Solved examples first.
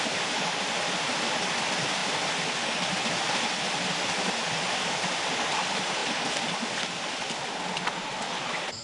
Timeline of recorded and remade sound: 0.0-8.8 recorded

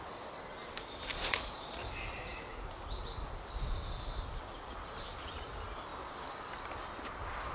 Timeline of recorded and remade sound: 0.0-1.1 recorded; 1.1-1.9 remade; 1.9-7.5 recorded

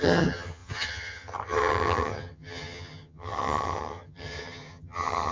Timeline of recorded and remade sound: 0.0-5.3 remade

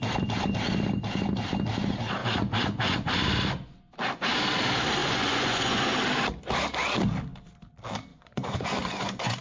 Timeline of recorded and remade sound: 0.0-2.2 recorded; 2.2-3.1 remade; 3.1-5.0 recorded; 5.0-5.8 remade; 5.8-8.1 recorded; 8.1-9.4 remade

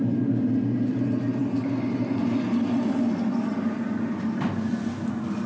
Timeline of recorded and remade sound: 0.0-5.5 recorded

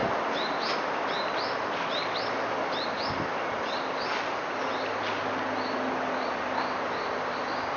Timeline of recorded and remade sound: 0.0-7.8 recorded